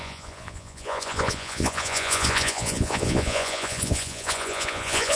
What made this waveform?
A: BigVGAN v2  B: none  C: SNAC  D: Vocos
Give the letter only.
D